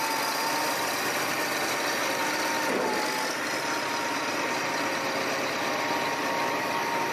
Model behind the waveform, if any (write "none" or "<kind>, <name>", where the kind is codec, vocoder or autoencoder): none